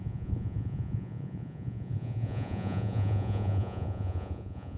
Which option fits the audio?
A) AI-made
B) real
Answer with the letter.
A